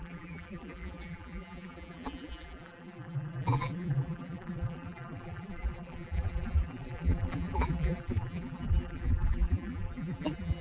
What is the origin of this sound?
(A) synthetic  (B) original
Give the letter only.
A